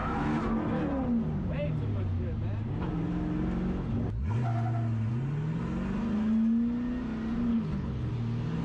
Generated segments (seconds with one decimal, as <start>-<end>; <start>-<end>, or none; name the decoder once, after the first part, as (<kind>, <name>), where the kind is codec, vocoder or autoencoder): 7.5-8.1 (codec, HILCodec)